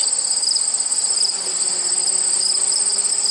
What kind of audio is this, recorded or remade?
recorded